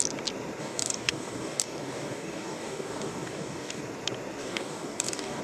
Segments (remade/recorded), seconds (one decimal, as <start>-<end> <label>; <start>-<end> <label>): 0.0-0.6 recorded; 0.6-3.8 remade; 3.8-4.4 recorded; 4.4-5.4 remade